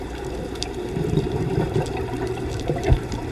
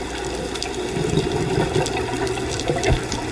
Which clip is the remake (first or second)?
first